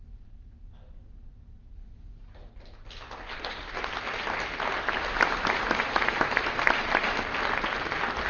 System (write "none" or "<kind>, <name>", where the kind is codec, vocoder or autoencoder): none